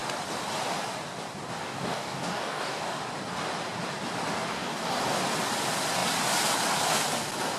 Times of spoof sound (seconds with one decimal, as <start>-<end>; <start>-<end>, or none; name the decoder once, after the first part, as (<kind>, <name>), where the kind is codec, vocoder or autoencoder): 1.6-3.0 (codec, DAC); 4.5-5.2